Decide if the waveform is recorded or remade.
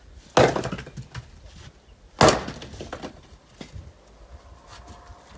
recorded